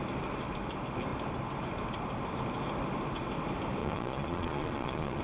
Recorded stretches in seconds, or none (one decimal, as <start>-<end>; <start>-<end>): 0.0-3.8